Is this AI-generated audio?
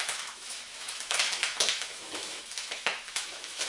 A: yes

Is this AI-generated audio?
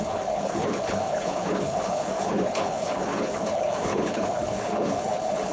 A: yes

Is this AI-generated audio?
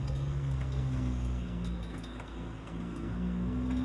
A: yes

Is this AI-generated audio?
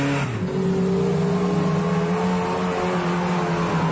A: no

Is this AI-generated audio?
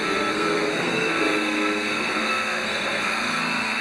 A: yes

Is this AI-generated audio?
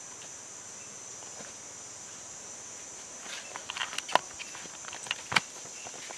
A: no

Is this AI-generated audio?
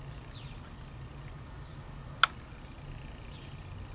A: no